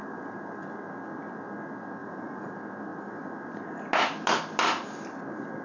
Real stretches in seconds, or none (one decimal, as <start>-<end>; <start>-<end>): 0.7-2.0; 2.5-5.6